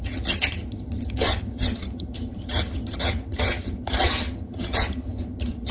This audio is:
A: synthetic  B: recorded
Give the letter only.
A